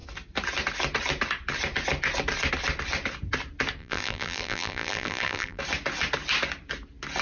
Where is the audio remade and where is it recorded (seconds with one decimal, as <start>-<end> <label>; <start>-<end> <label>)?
0.0-3.8 recorded; 3.8-5.6 remade; 5.6-7.2 recorded